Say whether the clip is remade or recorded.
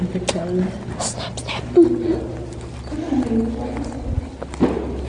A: recorded